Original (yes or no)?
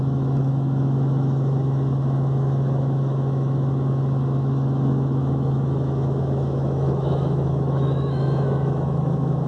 no